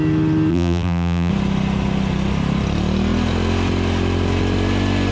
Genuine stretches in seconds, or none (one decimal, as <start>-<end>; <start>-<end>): 0.0-0.5; 1.3-5.1